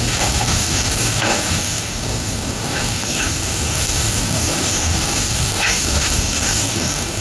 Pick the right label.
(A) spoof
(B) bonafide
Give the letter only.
A